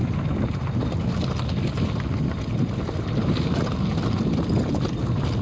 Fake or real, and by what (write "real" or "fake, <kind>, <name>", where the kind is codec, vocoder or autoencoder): real